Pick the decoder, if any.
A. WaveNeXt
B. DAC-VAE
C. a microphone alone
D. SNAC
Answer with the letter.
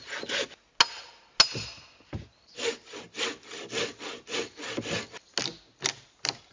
C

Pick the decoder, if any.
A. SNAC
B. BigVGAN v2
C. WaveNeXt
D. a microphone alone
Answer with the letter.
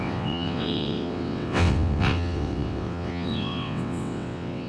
C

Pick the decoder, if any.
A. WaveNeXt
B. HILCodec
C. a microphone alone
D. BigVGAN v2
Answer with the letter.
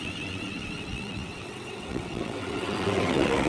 A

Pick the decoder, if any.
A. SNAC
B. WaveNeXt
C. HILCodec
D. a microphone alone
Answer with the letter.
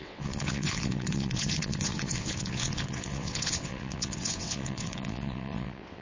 B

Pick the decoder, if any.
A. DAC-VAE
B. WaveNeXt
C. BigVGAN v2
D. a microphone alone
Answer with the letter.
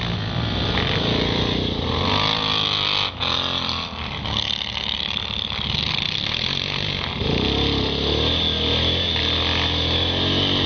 D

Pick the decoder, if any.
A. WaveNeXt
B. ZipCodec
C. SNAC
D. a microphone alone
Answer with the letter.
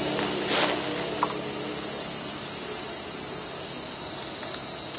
D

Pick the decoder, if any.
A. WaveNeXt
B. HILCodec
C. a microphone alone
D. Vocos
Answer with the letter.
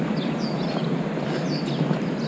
C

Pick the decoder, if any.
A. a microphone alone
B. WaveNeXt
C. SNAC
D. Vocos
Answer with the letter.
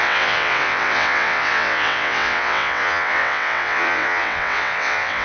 B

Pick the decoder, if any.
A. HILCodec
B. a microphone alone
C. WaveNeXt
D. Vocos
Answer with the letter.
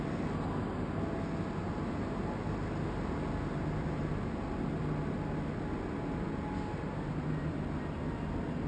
B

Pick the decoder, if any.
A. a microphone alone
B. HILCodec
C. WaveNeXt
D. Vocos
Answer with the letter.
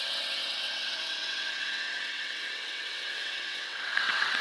C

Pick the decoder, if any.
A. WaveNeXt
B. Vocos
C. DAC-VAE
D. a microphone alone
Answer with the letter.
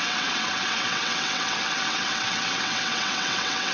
A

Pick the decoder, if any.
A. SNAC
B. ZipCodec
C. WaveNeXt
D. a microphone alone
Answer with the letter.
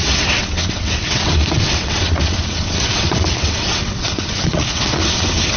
C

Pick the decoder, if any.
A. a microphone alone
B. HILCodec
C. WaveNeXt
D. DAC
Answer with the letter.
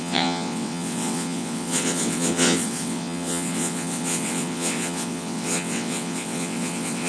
C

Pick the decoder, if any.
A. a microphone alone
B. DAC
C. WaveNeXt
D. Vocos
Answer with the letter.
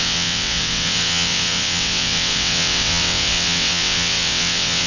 C